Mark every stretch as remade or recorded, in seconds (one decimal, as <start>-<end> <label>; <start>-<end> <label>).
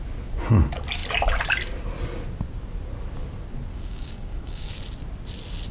0.0-3.7 recorded; 3.7-4.7 remade; 4.7-5.7 recorded